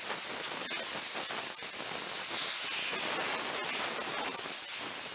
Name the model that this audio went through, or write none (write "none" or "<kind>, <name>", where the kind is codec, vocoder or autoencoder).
none